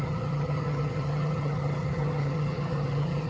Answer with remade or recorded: remade